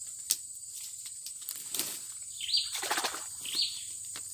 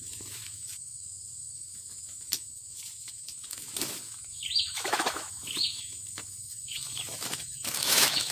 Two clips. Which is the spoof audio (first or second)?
second